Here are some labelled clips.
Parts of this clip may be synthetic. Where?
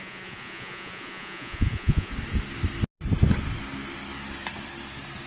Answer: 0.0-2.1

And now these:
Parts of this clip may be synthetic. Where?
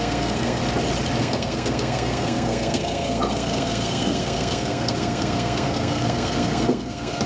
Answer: 0.0-0.6; 1.2-7.3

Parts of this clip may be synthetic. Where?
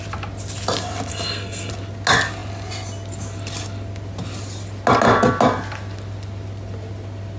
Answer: 1.1-1.7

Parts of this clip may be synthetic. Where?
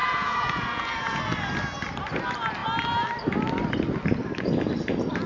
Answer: 0.0-1.2